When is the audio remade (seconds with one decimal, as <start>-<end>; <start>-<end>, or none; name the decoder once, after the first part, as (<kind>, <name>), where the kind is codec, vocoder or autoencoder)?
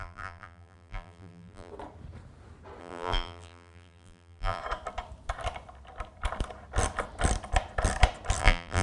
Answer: 0.0-1.7 (vocoder, BigVGAN v2); 2.8-4.6; 8.4-8.8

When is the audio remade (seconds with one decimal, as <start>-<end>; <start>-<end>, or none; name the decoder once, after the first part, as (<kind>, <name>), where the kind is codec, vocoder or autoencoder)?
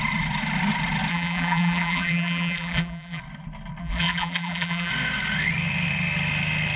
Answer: 1.1-3.2 (vocoder, BigVGAN v2); 3.8-4.9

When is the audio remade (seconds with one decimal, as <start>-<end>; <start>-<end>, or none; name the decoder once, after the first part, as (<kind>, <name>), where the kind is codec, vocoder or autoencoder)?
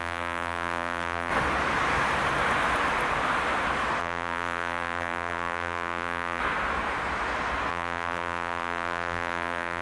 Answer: 0.0-1.3 (vocoder, BigVGAN v2); 4.0-6.4; 7.7-9.8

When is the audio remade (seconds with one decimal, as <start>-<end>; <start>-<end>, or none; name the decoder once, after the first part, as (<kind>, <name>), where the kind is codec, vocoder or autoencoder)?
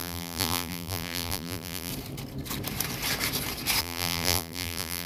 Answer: 0.0-1.9 (vocoder, BigVGAN v2); 3.8-5.1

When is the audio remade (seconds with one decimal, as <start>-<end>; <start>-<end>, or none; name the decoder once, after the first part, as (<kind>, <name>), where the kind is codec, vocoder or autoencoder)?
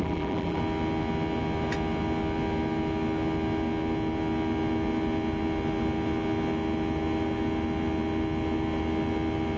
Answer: 0.0-0.6 (vocoder, BigVGAN v2)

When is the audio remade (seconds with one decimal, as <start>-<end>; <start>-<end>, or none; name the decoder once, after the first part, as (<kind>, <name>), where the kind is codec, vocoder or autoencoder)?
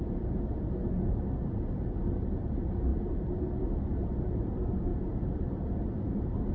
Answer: 0.0-0.8 (vocoder, BigVGAN v2); 2.0-4.9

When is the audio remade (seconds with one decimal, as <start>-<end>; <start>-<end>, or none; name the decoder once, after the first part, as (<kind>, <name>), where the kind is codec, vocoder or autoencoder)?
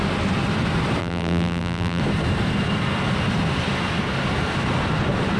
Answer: 1.0-2.0 (vocoder, BigVGAN v2)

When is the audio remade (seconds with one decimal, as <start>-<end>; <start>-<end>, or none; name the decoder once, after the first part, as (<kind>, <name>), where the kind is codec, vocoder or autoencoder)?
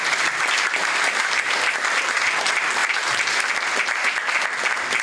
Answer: 0.8-2.1 (vocoder, BigVGAN v2)